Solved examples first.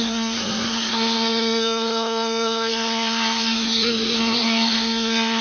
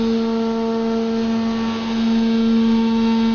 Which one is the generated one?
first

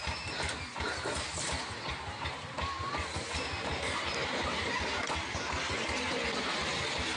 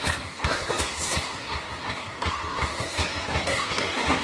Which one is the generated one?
second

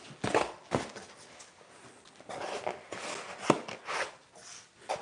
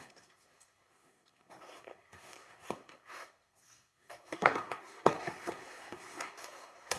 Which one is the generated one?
second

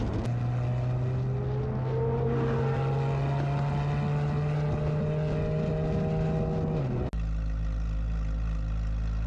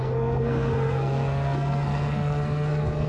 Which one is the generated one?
second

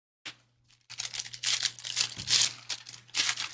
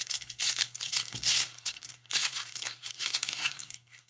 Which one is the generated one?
second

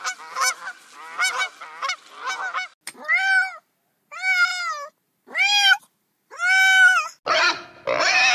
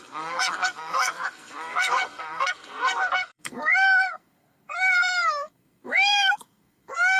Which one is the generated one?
second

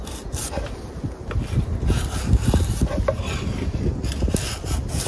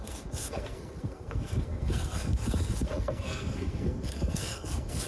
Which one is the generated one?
second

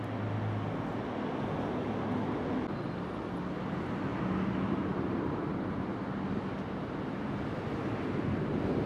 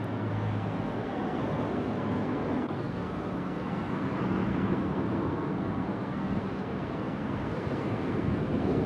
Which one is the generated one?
second